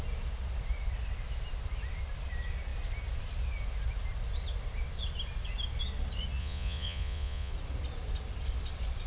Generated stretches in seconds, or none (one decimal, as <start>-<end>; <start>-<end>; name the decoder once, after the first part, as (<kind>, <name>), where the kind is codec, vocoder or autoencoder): 6.4-7.5 (vocoder, Vocos)